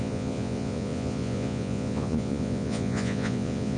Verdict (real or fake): fake